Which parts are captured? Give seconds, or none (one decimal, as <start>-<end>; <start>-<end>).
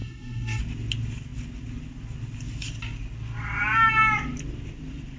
0.6-5.2